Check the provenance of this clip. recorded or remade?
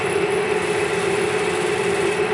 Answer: recorded